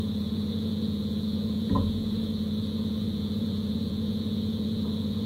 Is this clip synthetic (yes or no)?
yes